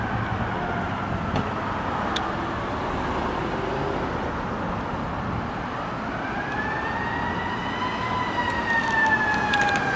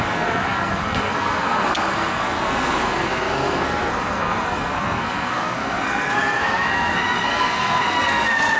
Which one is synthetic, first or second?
second